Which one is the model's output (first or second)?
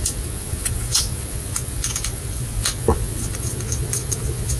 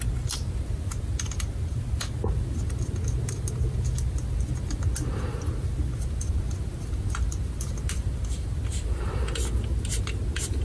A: first